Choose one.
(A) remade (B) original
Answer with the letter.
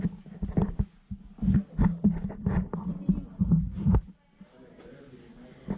B